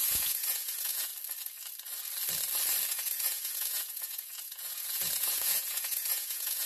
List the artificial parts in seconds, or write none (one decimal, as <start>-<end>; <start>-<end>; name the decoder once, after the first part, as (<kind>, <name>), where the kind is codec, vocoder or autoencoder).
0.0-1.1 (vocoder, Vocos); 2.9-6.7